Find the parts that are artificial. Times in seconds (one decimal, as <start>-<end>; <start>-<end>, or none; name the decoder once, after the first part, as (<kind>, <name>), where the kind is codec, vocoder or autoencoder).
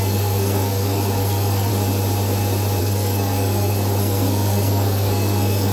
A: 0.0-1.7 (codec, SNAC); 2.8-5.7